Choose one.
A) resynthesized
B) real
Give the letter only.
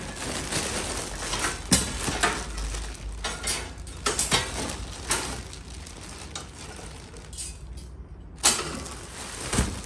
B